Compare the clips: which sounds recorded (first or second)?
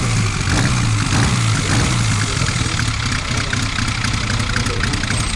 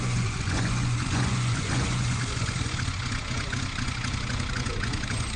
first